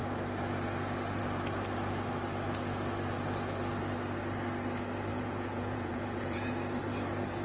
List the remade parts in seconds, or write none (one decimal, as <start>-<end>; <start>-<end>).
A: 5.1-6.6